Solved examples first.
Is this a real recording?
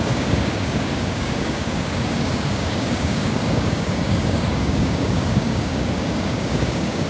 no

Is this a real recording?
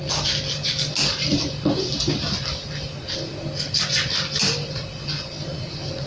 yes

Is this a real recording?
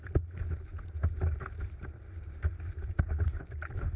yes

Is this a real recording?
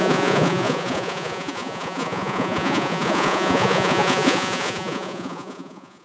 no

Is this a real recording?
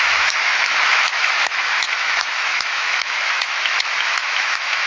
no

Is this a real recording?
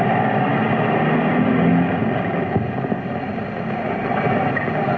yes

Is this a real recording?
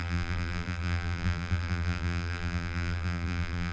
no